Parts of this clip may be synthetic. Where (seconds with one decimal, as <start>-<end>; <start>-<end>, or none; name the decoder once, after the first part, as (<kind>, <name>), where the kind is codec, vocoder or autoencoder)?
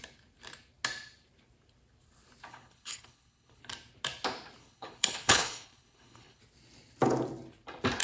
2.5-3.6 (codec, HILCodec); 4.6-6.4